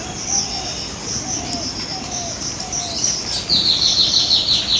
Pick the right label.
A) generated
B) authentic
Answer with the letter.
B